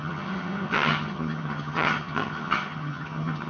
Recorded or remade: remade